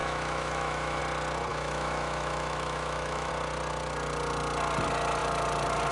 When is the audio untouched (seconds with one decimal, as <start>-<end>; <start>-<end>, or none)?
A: 1.0-1.5; 3.3-5.9